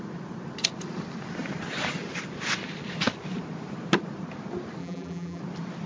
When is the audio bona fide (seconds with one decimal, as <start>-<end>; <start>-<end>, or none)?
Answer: 0.0-4.8; 5.4-5.9